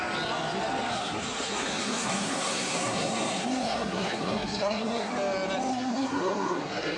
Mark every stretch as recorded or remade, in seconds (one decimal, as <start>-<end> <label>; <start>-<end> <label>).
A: 0.0-0.9 recorded; 0.9-5.1 remade; 5.1-5.7 recorded; 5.7-7.0 remade